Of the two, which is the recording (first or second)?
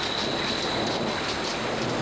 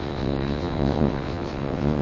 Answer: first